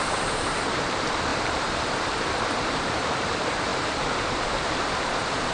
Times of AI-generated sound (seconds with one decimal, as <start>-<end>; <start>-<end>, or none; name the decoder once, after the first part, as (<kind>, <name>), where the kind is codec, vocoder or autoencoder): 0.0-5.5 (vocoder, BigVGAN v2)